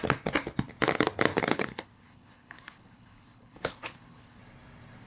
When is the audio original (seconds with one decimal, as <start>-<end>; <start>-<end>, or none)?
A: 0.0-1.3; 4.4-5.1